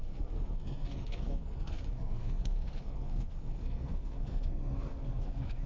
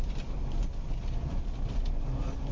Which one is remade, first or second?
first